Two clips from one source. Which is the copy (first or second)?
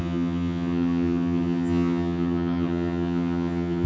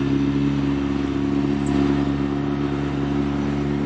first